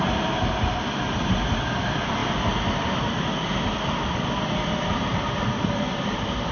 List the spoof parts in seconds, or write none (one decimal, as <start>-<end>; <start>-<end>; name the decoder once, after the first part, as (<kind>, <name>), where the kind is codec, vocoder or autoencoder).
none